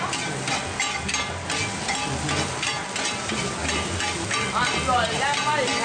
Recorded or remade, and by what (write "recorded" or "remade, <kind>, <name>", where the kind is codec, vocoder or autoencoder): recorded